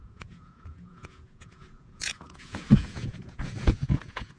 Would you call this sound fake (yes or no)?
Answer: yes